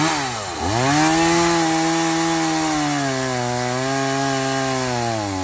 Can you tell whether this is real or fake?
real